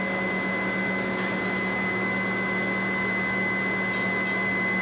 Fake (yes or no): no